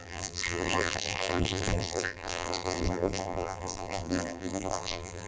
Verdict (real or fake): fake